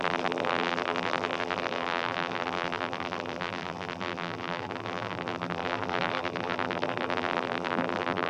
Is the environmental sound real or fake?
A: fake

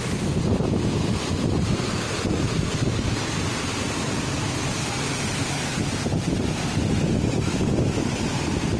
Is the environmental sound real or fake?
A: fake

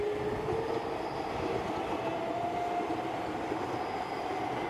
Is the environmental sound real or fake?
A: real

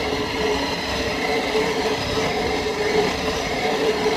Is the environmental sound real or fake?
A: fake